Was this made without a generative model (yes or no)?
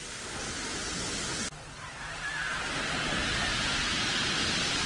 yes